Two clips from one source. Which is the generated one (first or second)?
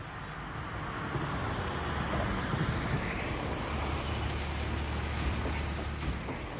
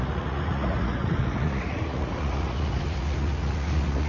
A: second